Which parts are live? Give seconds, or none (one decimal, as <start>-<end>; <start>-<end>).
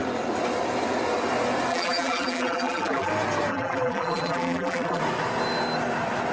0.0-1.7; 3.1-3.5; 5.0-6.3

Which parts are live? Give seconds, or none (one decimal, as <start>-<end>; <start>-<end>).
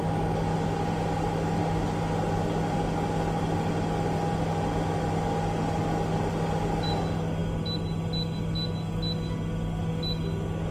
0.0-10.7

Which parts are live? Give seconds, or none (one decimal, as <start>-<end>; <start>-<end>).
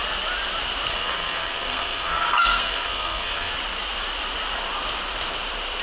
0.0-0.9; 3.5-5.8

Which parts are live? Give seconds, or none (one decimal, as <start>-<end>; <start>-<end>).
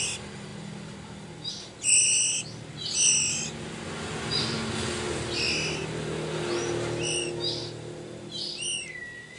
0.0-9.4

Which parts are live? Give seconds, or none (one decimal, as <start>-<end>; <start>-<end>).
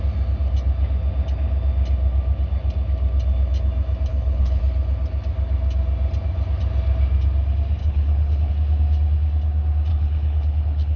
0.0-4.1; 4.6-7.8; 8.5-9.9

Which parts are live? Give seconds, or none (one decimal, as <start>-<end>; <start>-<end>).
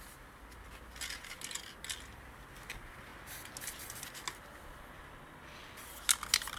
0.0-6.6